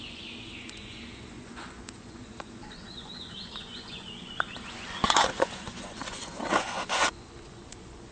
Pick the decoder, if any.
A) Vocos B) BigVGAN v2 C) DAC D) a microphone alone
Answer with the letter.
A